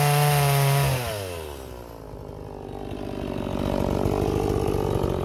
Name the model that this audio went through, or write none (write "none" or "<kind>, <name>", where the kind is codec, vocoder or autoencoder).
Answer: none